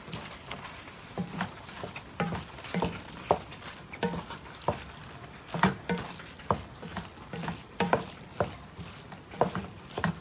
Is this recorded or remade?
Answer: recorded